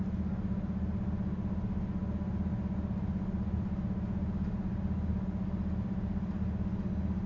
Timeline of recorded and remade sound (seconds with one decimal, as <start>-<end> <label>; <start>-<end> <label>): 0.0-7.3 recorded